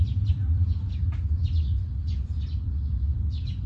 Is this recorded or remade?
remade